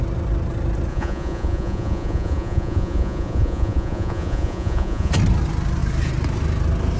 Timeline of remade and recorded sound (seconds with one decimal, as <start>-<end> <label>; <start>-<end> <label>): 0.0-0.9 recorded; 0.9-5.1 remade; 5.1-7.0 recorded